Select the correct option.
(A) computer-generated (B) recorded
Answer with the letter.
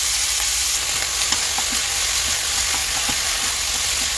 B